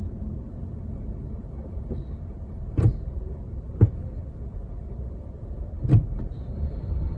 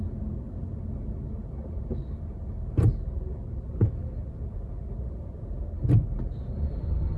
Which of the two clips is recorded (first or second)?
second